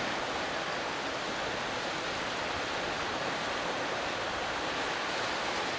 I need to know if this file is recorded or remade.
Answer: recorded